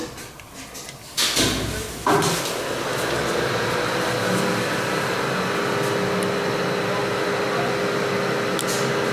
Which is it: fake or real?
real